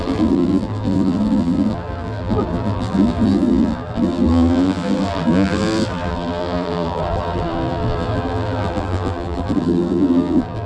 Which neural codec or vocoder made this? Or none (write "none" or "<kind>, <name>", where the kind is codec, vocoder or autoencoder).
vocoder, BigVGAN v2